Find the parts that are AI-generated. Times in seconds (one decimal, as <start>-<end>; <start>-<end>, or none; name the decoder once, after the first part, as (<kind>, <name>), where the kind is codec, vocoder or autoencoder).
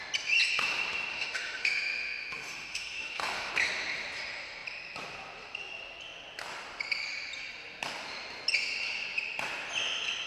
1.1-3.5 (autoencoder, DAC-VAE)